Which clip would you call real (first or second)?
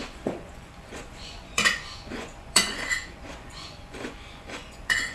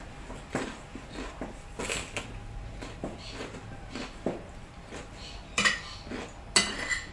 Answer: second